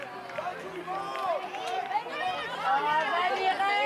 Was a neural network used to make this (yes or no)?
no